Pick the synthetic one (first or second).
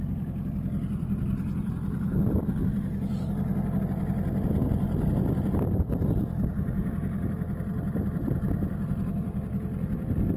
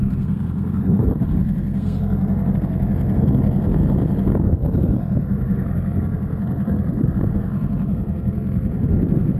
second